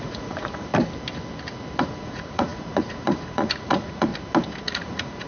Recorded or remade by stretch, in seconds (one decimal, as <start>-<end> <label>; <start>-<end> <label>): 0.0-0.7 remade; 0.7-1.8 recorded; 1.8-4.1 remade; 4.1-4.6 recorded; 4.6-5.3 remade